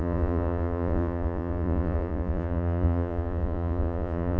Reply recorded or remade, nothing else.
remade